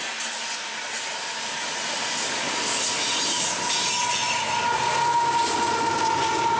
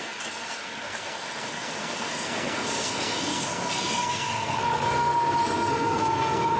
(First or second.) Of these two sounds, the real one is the first